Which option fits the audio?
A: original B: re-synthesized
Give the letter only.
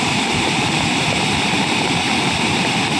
A